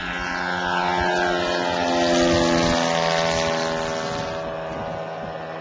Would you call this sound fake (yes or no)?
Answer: no